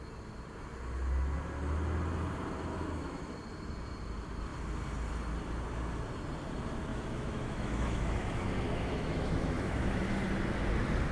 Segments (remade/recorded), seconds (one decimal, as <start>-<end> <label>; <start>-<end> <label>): 0.0-2.7 recorded; 2.7-3.3 remade; 3.3-6.9 recorded; 6.9-10.0 remade; 10.0-11.1 recorded